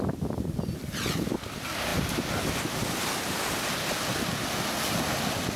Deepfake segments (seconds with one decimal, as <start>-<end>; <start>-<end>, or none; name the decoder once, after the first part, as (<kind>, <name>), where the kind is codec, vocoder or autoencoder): none